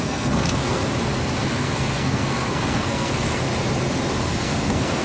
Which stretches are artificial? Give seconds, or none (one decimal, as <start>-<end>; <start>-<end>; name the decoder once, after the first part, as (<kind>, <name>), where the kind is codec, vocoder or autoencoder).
0.0-0.8 (codec, SNAC); 1.4-3.5; 4.2-5.0